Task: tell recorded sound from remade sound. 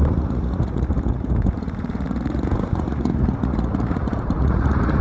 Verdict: remade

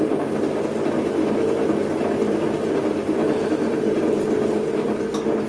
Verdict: recorded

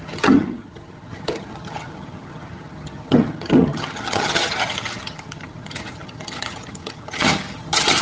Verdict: remade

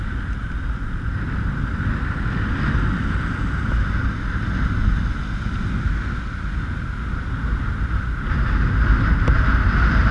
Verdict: recorded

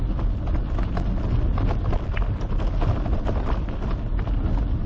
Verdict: recorded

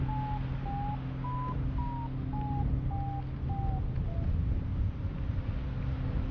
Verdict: recorded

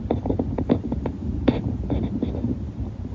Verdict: recorded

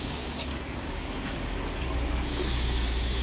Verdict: remade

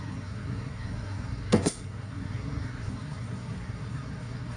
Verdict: remade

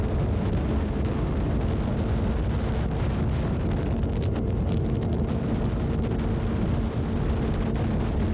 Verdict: recorded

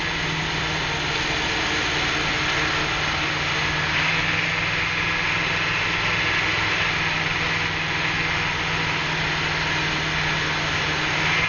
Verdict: recorded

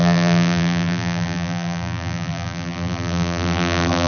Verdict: remade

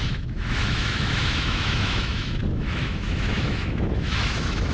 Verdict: remade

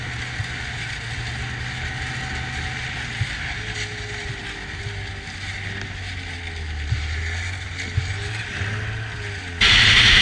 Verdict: recorded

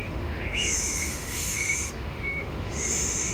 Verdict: remade